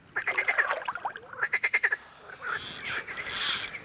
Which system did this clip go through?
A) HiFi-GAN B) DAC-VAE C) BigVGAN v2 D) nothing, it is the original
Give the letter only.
D